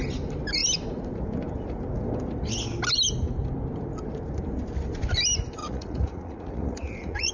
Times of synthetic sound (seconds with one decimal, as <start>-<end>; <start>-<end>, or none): 5.6-7.3

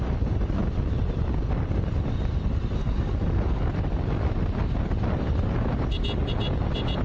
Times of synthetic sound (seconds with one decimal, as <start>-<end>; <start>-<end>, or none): 2.8-3.7